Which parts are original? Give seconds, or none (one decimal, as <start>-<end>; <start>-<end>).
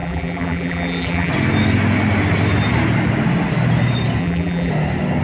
1.3-4.2; 4.7-5.2